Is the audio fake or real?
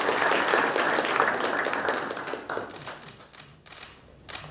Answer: real